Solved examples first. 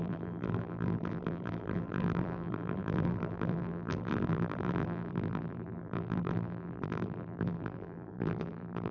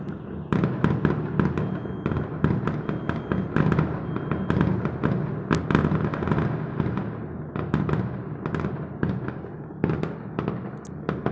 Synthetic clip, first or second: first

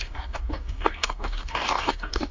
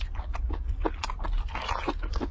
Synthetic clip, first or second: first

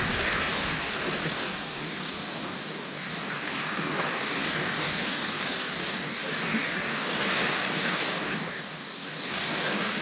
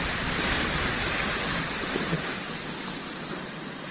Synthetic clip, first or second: first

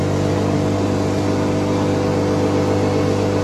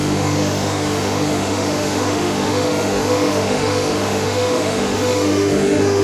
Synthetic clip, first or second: second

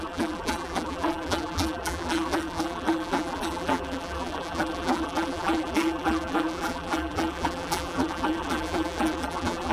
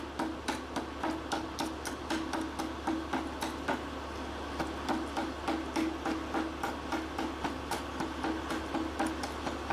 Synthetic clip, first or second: first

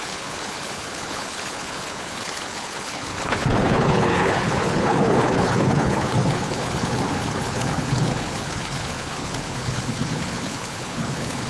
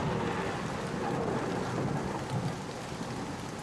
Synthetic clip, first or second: first